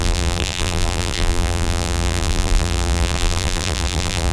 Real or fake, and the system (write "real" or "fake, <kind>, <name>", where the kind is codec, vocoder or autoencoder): fake, vocoder, BigVGAN v2